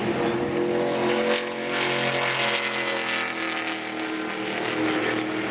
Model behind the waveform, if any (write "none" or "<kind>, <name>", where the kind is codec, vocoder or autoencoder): none